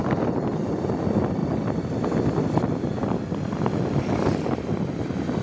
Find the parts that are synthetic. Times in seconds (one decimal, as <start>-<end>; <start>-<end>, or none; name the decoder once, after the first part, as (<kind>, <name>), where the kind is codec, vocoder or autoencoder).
none